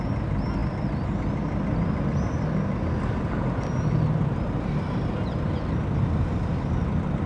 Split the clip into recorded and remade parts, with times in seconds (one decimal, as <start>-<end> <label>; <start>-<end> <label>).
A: 0.0-7.3 recorded